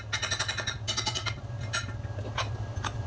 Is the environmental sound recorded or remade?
recorded